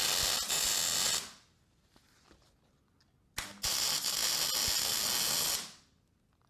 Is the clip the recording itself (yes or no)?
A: yes